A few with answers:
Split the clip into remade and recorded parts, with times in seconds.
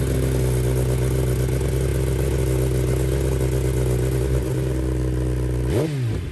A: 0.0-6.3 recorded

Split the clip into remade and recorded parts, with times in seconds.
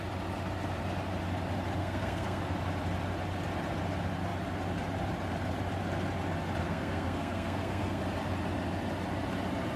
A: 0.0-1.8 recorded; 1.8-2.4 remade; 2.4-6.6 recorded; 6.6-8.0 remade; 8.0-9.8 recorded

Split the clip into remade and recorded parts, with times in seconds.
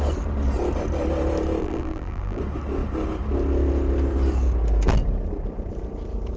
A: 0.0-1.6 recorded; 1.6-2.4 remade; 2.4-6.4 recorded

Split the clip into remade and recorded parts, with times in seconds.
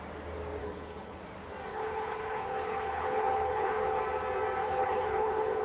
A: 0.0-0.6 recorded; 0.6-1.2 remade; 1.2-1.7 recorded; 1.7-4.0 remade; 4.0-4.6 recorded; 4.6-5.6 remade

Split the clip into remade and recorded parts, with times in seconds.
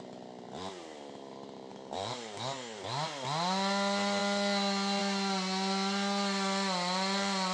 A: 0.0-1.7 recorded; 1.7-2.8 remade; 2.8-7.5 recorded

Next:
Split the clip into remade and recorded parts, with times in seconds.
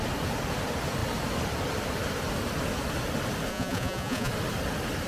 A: 0.0-3.5 recorded; 3.5-4.3 remade; 4.3-5.1 recorded